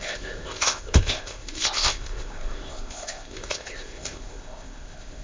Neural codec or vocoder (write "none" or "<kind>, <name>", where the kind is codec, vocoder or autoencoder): codec, ZipCodec